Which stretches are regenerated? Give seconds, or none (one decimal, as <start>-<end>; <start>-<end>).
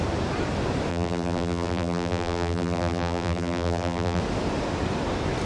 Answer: 0.9-4.2